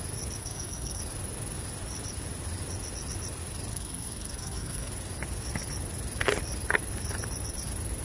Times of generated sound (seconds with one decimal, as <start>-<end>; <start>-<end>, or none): 0.4-1.0; 3.7-4.9